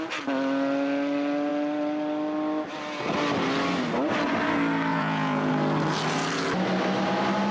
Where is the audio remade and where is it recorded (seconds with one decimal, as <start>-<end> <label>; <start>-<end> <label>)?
0.0-4.9 recorded; 4.9-5.5 remade; 5.5-7.5 recorded